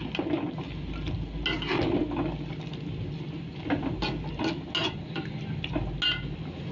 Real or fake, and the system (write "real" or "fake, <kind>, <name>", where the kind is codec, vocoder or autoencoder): real